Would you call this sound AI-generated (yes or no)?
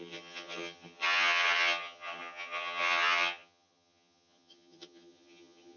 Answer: yes